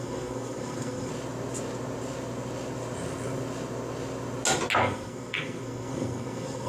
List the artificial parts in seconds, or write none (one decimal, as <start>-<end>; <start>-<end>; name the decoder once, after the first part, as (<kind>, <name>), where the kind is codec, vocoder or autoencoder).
0.0-1.1 (codec, SNAC); 4.8-6.7